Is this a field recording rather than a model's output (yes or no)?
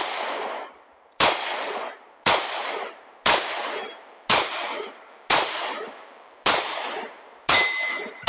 no